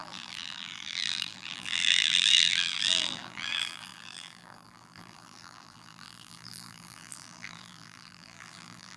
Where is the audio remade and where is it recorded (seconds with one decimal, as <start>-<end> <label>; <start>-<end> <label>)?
0.0-9.0 remade